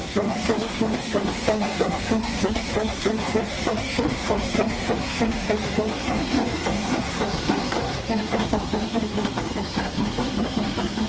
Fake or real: fake